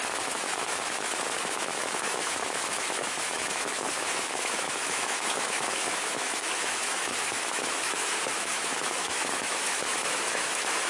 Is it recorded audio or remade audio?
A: remade